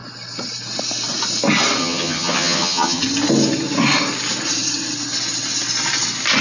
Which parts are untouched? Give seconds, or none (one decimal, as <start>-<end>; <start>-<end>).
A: 0.0-1.8; 3.0-6.4